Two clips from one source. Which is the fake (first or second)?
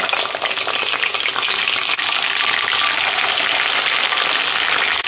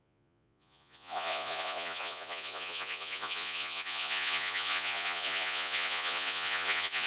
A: second